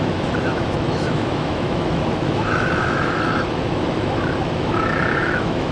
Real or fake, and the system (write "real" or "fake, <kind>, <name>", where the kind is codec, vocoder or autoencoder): fake, autoencoder, DAC-VAE